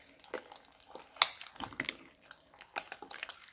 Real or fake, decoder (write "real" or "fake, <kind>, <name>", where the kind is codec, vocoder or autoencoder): real